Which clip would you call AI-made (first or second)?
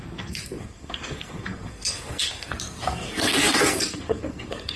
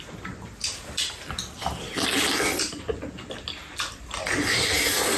first